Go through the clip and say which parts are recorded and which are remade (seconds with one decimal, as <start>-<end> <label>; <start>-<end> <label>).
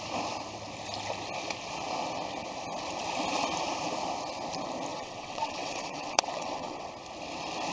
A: 0.0-4.9 recorded; 4.9-6.9 remade; 6.9-7.7 recorded